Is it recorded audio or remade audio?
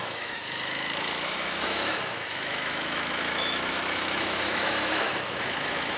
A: remade